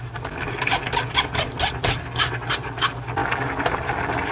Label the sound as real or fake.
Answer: real